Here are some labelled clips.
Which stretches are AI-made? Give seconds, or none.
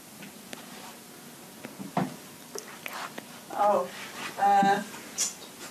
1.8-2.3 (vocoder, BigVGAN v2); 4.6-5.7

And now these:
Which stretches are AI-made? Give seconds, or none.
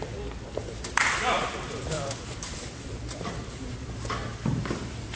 0.6-3.7 (vocoder, BigVGAN v2)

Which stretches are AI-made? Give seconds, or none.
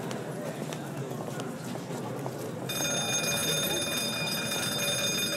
3.4-4.8 (vocoder, BigVGAN v2)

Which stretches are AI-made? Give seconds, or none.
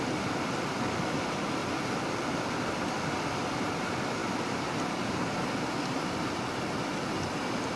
0.0-1.6 (vocoder, BigVGAN v2); 2.1-4.2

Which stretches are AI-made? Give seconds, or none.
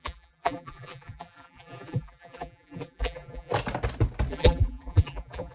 0.0-3.5 (vocoder, BigVGAN v2); 4.3-5.5